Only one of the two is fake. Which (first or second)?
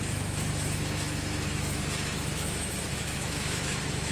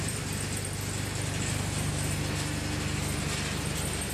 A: first